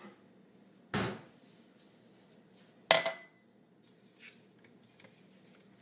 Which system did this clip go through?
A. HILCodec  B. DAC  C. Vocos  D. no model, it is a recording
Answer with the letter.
D